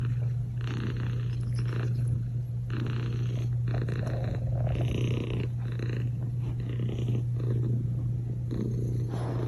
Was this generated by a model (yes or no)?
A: no